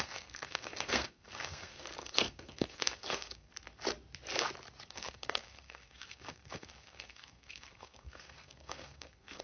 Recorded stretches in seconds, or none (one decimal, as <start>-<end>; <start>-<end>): 3.5-4.9